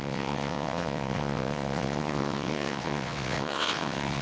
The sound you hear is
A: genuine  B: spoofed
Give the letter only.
B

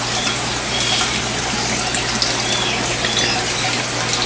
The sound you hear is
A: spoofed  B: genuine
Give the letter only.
B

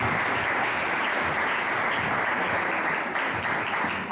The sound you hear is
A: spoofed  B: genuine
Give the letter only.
B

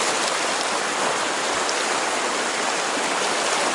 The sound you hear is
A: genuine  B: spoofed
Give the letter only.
A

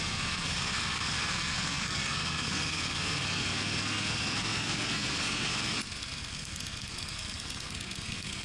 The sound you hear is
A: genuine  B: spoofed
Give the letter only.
B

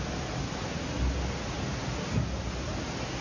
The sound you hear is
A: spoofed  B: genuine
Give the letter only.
B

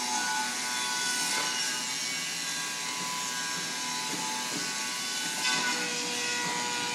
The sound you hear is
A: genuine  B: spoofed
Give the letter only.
A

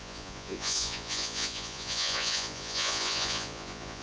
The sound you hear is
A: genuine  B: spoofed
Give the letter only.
B